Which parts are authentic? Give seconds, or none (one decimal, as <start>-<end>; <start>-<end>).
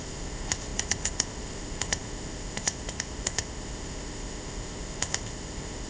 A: none